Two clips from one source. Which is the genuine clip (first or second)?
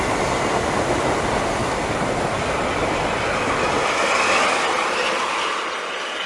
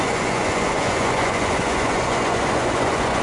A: first